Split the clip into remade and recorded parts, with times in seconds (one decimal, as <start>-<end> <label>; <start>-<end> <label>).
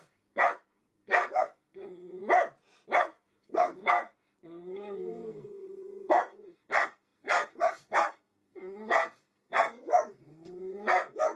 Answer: 0.0-2.2 remade; 2.2-3.0 recorded; 3.0-11.4 remade